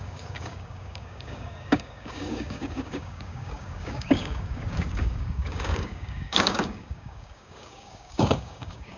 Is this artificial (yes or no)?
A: yes